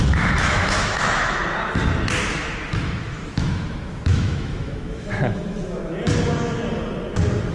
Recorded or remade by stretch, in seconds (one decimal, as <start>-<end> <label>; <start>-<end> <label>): 0.0-1.4 remade; 1.4-2.3 recorded; 2.3-5.8 remade; 5.8-7.5 recorded

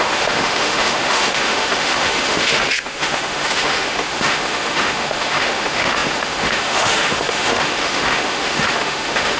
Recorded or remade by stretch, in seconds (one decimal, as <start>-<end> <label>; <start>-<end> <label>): 0.0-9.4 remade

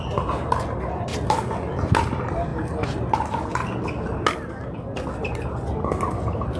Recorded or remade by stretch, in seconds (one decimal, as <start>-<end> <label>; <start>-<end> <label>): 0.0-6.6 recorded

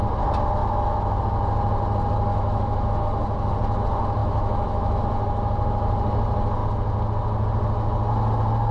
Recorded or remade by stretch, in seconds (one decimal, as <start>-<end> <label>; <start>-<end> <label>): 0.0-0.6 recorded; 0.6-1.2 remade; 1.2-2.3 recorded; 2.3-2.9 remade; 2.9-4.2 recorded; 4.2-5.0 remade; 5.0-8.7 recorded

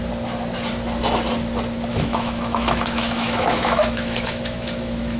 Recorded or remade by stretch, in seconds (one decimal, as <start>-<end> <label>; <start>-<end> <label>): 0.0-1.9 recorded; 1.9-5.2 remade

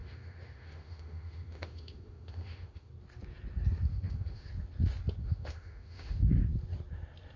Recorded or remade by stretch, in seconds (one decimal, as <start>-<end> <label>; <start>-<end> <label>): 0.0-2.9 remade; 2.9-3.9 recorded; 3.9-4.5 remade; 4.5-5.2 recorded; 5.2-6.4 remade; 6.4-7.4 recorded